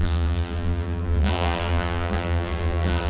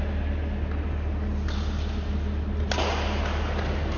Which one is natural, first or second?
second